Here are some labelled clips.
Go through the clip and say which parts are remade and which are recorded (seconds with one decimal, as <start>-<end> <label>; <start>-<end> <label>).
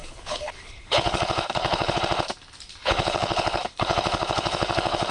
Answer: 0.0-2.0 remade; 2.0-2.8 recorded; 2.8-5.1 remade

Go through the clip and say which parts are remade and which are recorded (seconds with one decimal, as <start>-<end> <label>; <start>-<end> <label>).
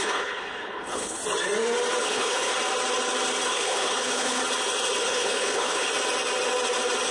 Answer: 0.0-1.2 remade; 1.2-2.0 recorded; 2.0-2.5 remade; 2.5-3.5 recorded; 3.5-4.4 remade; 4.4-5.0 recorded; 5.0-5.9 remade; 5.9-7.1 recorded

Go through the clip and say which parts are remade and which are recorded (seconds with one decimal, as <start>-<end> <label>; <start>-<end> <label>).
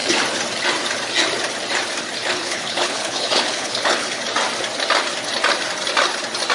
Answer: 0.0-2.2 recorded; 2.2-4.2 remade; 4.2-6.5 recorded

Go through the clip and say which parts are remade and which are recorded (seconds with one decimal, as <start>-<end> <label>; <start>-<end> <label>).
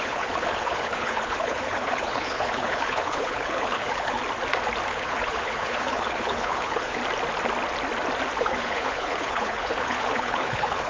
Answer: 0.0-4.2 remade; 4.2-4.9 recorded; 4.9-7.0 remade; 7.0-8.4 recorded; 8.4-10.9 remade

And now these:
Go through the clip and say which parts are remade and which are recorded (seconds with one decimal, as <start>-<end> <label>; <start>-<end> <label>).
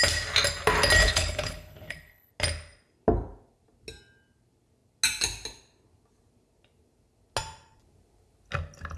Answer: 0.0-1.0 recorded; 1.0-2.3 remade; 2.3-9.0 recorded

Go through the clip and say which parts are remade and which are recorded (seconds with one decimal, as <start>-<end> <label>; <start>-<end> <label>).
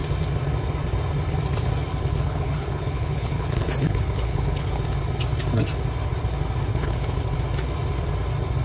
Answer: 0.0-1.9 recorded; 1.9-4.7 remade; 4.7-6.7 recorded; 6.7-7.2 remade; 7.2-8.6 recorded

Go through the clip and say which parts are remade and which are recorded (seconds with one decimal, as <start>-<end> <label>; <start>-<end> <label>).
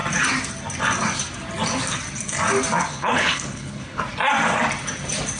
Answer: 0.0-2.9 recorded; 2.9-4.0 remade; 4.0-5.4 recorded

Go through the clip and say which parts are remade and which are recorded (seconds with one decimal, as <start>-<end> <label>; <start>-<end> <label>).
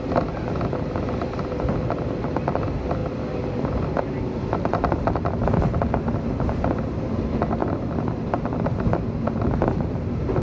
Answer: 0.0-10.4 recorded